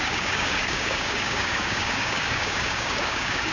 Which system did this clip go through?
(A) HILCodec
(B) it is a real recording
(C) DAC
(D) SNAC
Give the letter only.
C